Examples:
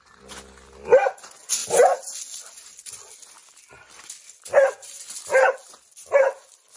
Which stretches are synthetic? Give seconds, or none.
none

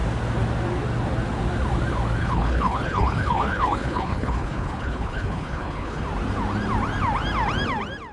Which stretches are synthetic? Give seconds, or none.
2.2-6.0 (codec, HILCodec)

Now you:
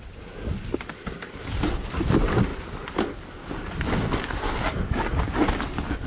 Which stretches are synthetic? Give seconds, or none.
none